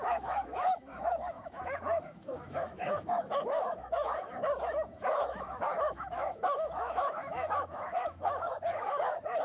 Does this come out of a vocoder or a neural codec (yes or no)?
yes